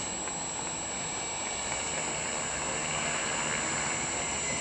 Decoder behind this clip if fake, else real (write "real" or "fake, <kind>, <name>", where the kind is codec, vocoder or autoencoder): real